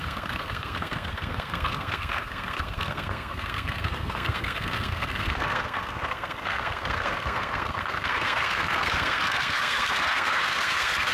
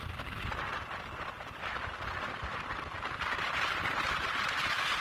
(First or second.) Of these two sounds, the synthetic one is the first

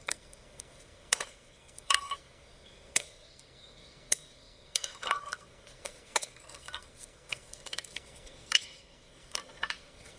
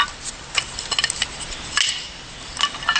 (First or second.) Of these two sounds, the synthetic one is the first